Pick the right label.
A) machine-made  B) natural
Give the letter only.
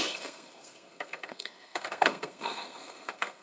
A